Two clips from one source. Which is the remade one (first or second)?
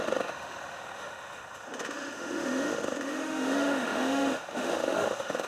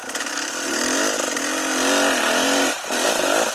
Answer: first